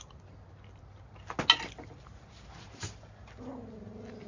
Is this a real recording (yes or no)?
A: yes